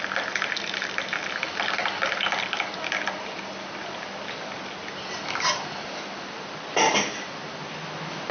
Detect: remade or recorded recorded